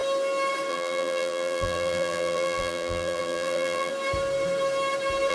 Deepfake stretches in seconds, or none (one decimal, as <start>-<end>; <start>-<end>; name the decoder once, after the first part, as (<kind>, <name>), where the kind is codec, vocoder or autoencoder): 0.7-3.9 (vocoder, BigVGAN v2)